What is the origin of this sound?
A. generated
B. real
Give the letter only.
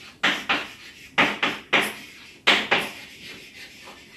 B